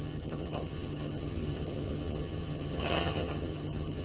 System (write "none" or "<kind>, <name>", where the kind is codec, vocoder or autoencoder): vocoder, HiFi-GAN